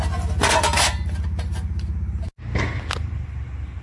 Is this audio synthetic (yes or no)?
no